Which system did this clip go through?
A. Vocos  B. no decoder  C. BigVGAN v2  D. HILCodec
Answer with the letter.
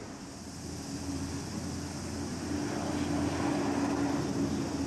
B